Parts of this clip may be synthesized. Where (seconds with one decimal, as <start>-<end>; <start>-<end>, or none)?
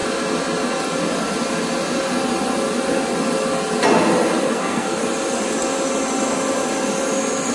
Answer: 4.5-5.0